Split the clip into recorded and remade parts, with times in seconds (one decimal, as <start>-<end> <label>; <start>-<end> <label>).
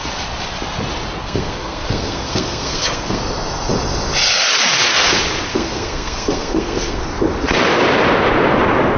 0.0-1.2 recorded; 1.2-3.2 remade; 3.2-5.5 recorded; 5.5-7.0 remade; 7.0-9.0 recorded